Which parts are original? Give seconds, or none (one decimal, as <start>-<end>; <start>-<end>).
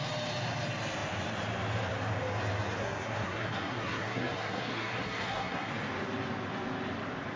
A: 0.0-2.8; 5.7-7.4